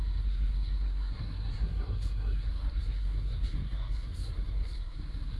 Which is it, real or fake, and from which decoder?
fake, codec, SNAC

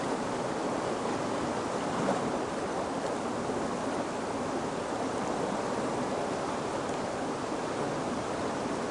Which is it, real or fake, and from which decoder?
real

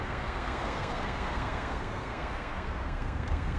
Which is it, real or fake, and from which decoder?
fake, codec, SNAC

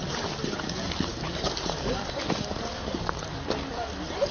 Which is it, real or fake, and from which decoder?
real